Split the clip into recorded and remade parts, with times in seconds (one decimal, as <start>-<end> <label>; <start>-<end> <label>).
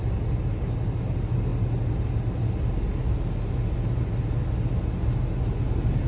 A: 0.0-6.1 recorded